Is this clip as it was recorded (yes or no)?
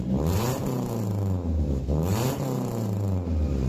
no